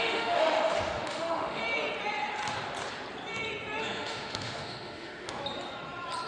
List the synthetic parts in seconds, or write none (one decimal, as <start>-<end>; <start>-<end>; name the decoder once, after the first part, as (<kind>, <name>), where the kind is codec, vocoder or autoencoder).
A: 0.0-1.6 (autoencoder, DAC-VAE); 3.8-5.4